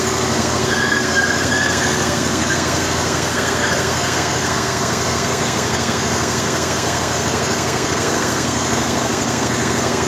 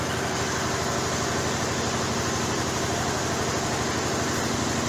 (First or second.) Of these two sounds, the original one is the second